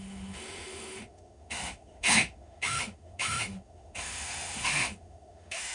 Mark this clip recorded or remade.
remade